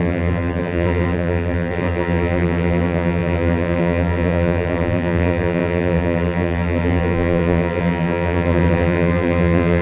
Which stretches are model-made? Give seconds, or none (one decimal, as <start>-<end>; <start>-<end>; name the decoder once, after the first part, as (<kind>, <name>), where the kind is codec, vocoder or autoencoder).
0.0-9.8 (vocoder, BigVGAN v2)